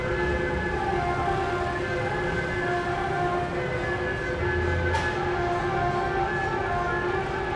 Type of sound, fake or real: real